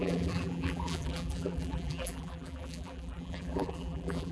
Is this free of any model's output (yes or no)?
no